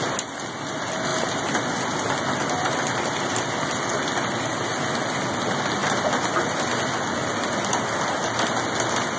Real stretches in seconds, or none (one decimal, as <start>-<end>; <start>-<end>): 0.0-9.2